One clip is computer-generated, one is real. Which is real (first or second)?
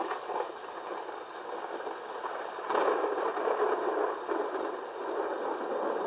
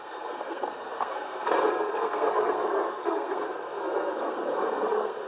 first